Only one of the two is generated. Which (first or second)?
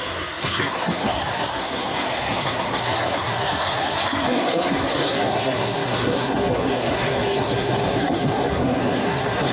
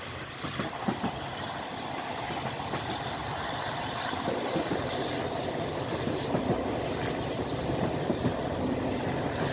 first